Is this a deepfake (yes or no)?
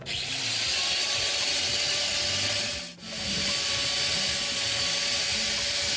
no